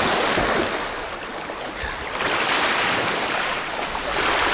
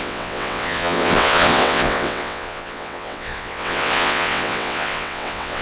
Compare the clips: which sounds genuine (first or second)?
first